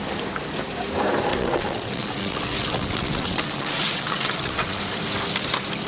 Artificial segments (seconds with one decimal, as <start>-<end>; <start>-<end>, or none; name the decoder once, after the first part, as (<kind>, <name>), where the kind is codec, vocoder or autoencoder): 1.3-4.8 (vocoder, WaveNeXt)